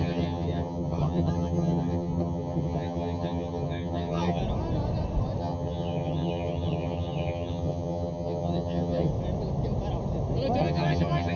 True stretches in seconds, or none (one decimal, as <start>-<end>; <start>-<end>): 4.4-5.4; 9.1-10.6